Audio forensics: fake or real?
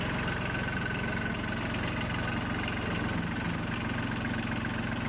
real